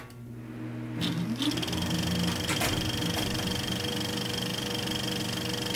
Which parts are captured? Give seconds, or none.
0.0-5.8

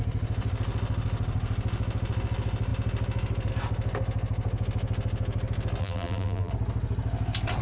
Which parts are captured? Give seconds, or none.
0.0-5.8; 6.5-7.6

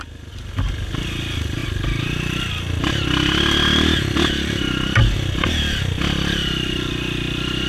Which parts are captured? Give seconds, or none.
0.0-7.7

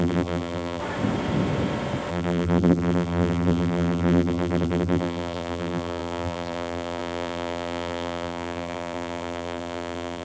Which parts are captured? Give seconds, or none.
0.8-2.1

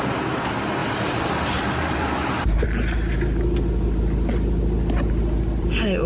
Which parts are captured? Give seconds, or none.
0.0-0.8; 2.6-6.1

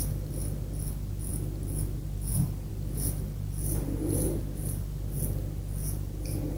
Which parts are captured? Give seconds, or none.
0.0-6.6